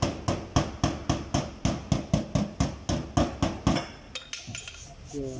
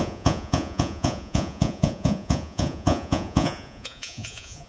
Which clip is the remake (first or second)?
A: second